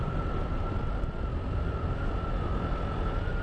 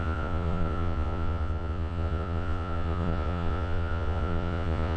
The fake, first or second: second